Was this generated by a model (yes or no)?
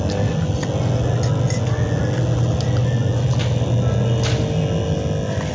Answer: no